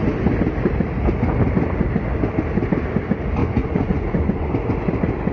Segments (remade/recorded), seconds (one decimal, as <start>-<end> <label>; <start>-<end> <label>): 0.0-3.4 recorded; 3.4-4.5 remade; 4.5-5.3 recorded